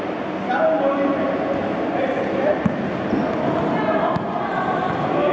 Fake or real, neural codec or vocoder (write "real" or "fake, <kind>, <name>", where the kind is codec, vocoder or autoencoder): real